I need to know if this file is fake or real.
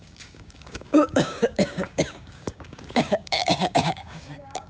fake